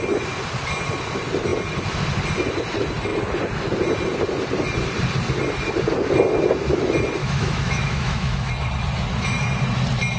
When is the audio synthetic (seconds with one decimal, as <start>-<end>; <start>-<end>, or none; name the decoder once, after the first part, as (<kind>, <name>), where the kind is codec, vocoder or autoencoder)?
7.2-8.5 (autoencoder, DAC-VAE)